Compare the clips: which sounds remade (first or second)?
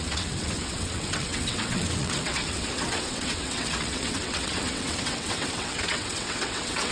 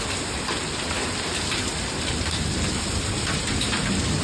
first